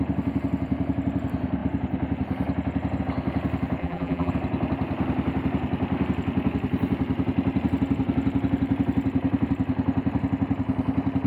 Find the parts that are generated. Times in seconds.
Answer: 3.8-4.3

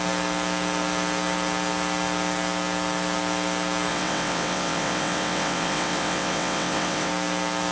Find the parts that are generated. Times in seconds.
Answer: 3.9-7.1

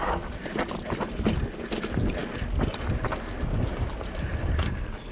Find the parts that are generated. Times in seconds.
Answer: none

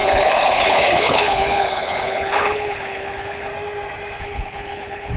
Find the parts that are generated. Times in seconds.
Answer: 0.0-3.5; 4.2-5.2